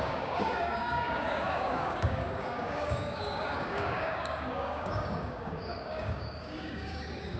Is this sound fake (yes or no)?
yes